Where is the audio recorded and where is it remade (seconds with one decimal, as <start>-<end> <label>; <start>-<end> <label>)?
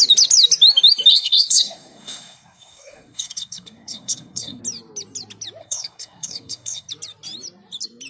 0.0-1.1 recorded; 1.1-4.6 remade; 4.6-5.6 recorded; 5.6-6.9 remade; 6.9-8.1 recorded